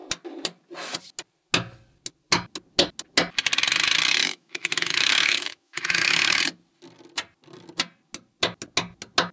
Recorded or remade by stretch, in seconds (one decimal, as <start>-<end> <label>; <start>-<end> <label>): 0.0-4.2 recorded; 4.2-6.4 remade; 6.4-9.3 recorded